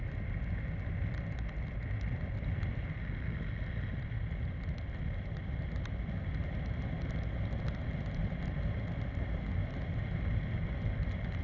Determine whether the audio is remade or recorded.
recorded